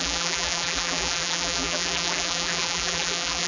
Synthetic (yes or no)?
yes